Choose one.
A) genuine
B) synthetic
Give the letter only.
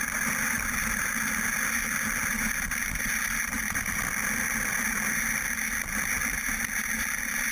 A